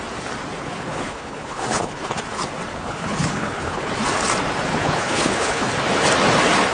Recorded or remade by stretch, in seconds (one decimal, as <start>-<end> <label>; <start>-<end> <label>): 0.0-0.6 recorded; 0.6-2.2 remade; 2.2-2.7 recorded; 2.7-3.9 remade; 3.9-4.7 recorded; 4.7-5.7 remade; 5.7-6.7 recorded